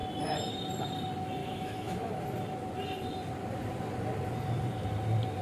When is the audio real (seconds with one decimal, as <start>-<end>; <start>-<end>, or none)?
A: 0.0-1.4; 2.2-5.4